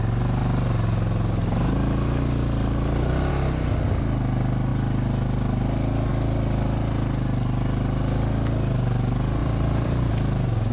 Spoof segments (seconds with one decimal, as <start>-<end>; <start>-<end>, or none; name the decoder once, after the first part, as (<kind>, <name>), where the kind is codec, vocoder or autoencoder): 9.4-10.1 (vocoder, BigVGAN v2)